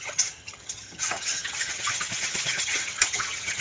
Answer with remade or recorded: remade